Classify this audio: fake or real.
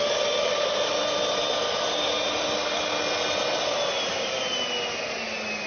real